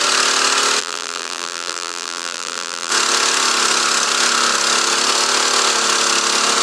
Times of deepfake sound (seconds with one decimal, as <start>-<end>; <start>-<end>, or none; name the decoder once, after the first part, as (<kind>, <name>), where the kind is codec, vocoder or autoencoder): 0.8-2.9 (vocoder, BigVGAN v2)